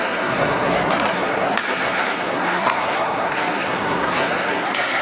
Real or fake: fake